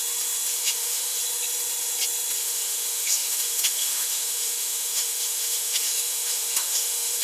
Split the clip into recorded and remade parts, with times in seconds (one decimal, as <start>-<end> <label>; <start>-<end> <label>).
0.0-0.5 recorded; 0.5-1.2 remade; 1.2-2.4 recorded; 2.4-7.2 remade